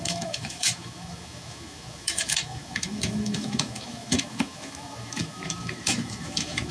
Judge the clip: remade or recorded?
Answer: remade